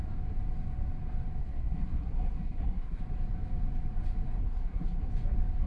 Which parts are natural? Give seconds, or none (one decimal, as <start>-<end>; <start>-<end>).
0.0-1.4; 3.0-4.4; 5.1-5.7